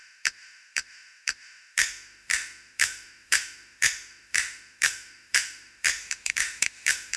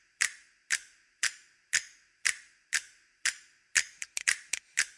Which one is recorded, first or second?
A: second